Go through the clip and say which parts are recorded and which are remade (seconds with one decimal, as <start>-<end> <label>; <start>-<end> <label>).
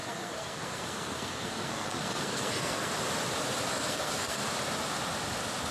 0.0-2.9 remade; 2.9-3.7 recorded; 3.7-4.4 remade; 4.4-5.7 recorded